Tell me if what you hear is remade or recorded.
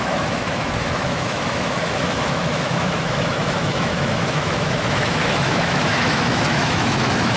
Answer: remade